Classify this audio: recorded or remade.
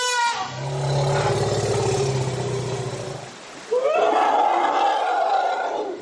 recorded